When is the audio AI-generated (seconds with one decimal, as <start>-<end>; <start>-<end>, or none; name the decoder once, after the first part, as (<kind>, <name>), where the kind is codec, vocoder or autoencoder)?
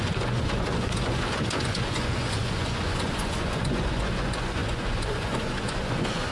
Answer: 0.0-6.3 (vocoder, Vocos)